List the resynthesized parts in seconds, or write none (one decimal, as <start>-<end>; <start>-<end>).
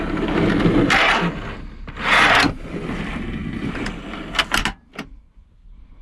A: none